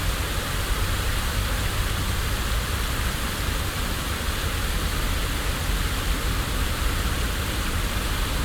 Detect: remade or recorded recorded